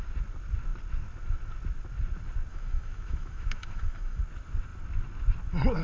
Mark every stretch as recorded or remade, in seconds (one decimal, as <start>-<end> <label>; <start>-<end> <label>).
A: 0.0-2.5 recorded; 2.5-4.2 remade; 4.2-5.8 recorded